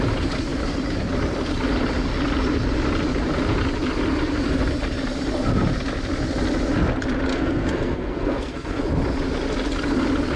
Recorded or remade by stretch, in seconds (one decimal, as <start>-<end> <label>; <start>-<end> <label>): 0.0-7.3 recorded; 7.3-8.8 remade; 8.8-10.4 recorded